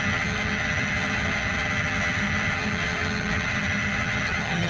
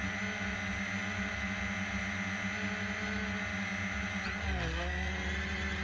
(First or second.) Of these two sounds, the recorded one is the second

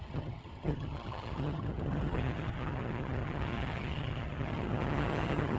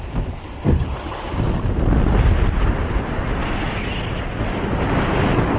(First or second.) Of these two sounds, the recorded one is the second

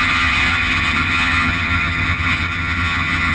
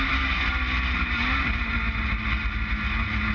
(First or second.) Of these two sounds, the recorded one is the second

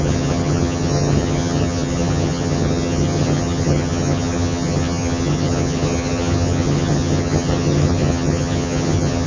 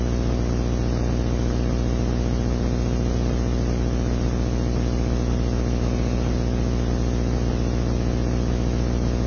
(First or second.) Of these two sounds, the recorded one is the second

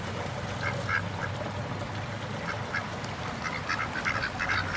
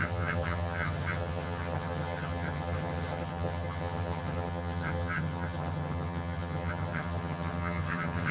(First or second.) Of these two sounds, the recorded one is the first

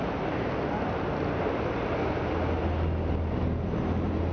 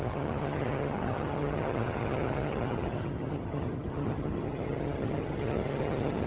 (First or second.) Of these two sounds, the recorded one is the first